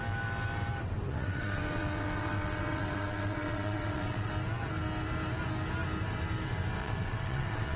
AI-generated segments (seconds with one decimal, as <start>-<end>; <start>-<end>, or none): 1.1-4.3; 6.8-7.8